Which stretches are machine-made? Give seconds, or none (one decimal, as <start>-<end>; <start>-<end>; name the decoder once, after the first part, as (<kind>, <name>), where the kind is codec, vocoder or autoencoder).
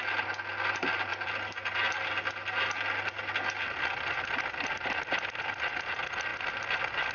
none